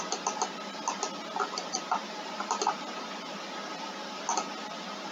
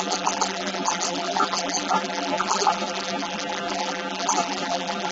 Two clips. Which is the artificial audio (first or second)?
second